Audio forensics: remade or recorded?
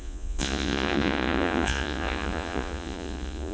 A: remade